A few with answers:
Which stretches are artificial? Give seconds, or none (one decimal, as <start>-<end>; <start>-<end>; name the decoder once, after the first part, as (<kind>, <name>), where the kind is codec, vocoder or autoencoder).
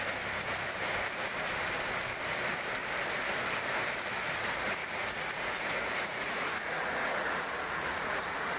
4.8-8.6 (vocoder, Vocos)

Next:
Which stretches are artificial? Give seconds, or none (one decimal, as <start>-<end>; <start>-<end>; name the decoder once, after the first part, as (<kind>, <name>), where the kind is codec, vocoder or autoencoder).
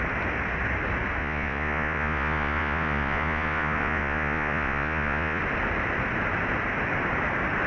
1.2-5.4 (vocoder, Vocos)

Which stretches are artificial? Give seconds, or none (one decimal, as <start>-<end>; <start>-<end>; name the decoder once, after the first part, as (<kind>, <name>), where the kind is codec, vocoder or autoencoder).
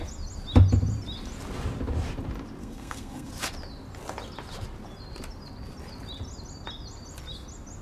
2.6-3.3 (codec, SNAC)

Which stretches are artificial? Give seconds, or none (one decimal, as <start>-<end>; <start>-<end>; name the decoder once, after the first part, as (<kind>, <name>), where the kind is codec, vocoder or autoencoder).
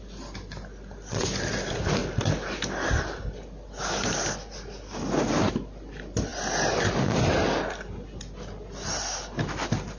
none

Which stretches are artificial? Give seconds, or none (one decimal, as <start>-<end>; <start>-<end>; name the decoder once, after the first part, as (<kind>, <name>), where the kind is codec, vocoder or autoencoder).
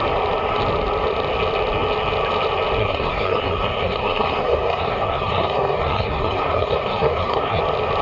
2.8-7.6 (codec, SNAC)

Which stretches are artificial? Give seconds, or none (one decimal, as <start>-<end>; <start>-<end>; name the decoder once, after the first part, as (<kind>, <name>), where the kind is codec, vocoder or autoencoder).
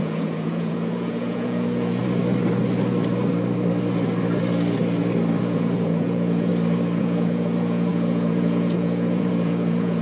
0.0-2.0 (vocoder, Vocos); 5.4-6.5; 7.0-10.0